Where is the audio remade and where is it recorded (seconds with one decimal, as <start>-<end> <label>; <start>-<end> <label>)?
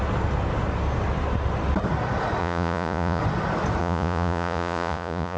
0.0-2.4 recorded; 2.4-3.2 remade; 3.2-3.8 recorded; 3.8-5.4 remade